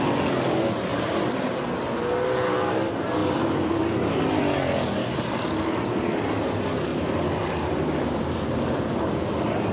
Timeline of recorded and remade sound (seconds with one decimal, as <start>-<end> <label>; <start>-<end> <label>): 0.0-3.2 recorded; 3.2-4.4 remade; 4.4-6.9 recorded; 6.9-8.2 remade; 8.2-9.7 recorded